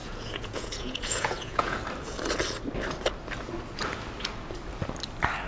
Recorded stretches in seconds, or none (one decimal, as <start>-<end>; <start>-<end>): 1.8-5.5